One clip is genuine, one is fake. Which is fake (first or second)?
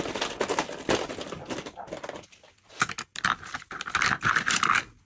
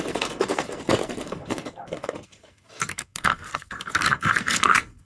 second